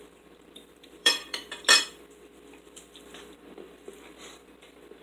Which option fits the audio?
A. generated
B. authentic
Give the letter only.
A